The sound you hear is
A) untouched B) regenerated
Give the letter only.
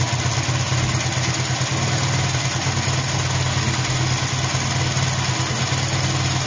A